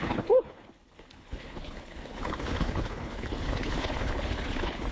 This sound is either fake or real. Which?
fake